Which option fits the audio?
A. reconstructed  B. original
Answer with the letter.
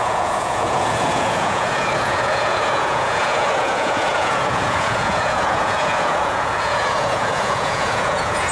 A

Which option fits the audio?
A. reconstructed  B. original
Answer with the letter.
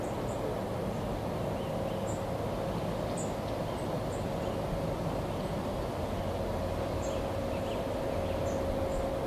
B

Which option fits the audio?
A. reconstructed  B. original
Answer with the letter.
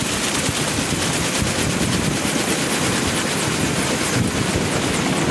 B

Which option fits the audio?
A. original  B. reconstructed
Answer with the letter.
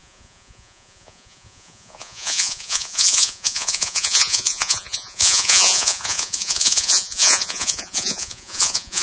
B